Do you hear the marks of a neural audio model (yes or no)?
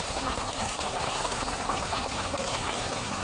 yes